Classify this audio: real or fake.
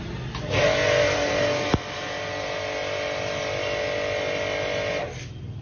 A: real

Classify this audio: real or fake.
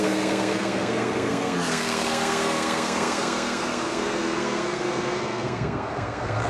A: fake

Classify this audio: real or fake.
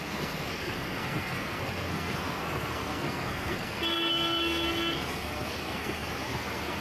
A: fake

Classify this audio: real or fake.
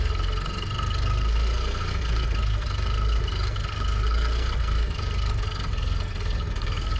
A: fake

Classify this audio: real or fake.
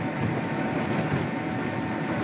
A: real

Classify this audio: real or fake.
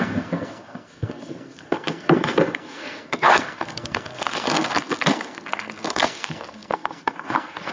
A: fake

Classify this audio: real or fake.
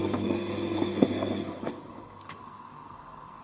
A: fake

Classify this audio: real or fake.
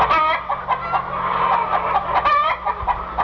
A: real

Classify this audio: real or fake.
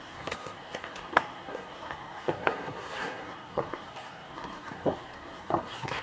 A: fake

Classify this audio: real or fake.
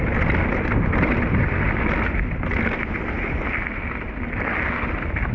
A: real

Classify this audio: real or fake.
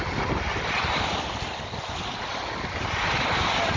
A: real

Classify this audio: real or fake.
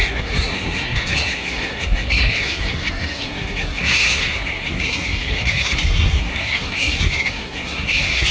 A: fake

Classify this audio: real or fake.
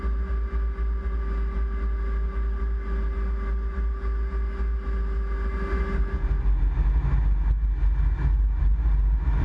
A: real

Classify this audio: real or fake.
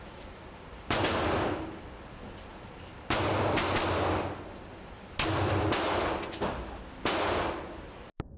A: real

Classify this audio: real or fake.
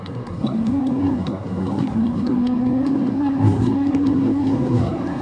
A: fake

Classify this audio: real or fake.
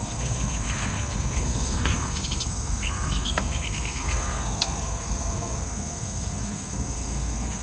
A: fake